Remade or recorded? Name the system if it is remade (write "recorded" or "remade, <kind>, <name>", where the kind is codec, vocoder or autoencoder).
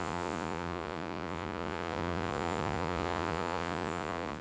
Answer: remade, vocoder, Vocos